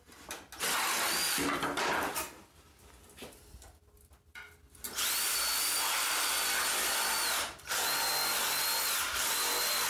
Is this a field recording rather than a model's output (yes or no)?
yes